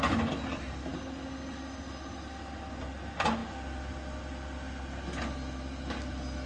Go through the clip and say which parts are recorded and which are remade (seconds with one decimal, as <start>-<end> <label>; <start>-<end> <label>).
0.0-6.5 recorded

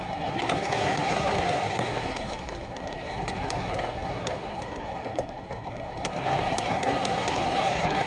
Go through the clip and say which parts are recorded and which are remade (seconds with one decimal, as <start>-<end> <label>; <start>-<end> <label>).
0.0-8.1 remade

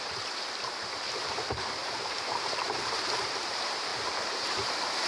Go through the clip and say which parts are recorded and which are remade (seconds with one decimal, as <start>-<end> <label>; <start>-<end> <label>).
0.0-5.1 remade